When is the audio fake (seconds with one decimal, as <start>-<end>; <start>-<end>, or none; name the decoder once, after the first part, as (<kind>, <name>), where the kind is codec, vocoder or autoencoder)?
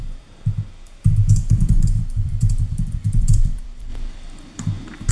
1.3-3.9 (vocoder, BigVGAN v2)